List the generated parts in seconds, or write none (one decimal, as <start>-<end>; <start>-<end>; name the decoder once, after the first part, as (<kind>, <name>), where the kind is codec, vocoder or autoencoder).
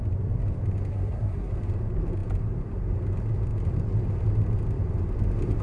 0.9-1.5 (codec, SNAC)